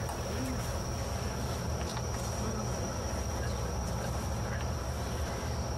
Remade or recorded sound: recorded